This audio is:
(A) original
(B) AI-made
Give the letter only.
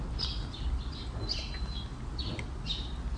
A